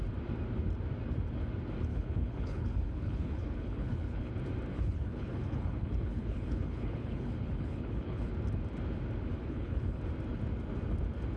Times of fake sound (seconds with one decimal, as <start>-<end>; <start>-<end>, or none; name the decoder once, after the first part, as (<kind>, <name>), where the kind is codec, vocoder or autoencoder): 1.9-4.3 (codec, HILCodec); 4.7-8.3; 9.3-10.0